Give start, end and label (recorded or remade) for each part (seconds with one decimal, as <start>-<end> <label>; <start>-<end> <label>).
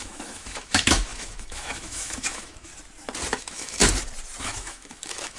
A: 0.0-2.7 remade; 2.7-3.4 recorded; 3.4-3.8 remade; 3.8-4.4 recorded; 4.4-5.4 remade